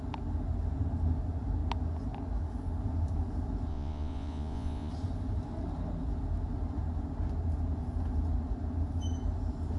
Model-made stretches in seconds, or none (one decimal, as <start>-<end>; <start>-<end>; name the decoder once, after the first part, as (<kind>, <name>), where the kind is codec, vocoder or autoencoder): 3.7-4.9 (vocoder, Vocos)